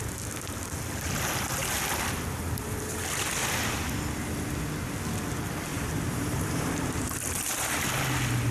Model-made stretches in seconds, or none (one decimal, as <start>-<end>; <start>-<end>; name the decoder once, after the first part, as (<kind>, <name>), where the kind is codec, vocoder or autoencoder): 5.7-7.1 (vocoder, BigVGAN v2)